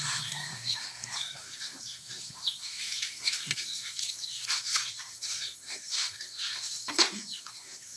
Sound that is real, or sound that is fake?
fake